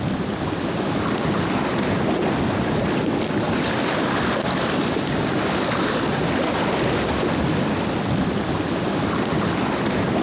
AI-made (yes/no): no